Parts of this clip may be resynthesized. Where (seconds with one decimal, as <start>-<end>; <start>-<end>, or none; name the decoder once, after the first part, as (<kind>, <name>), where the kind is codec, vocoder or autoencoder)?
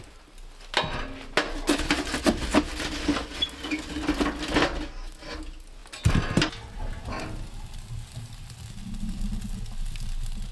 none